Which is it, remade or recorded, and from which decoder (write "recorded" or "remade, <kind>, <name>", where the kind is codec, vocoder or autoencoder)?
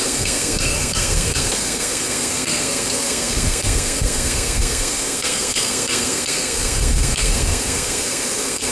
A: remade, codec, SNAC